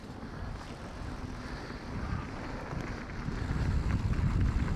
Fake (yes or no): no